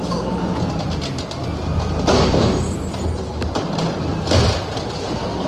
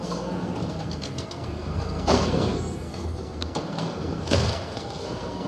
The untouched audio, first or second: first